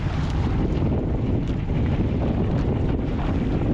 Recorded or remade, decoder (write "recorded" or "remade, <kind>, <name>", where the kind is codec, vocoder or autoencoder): recorded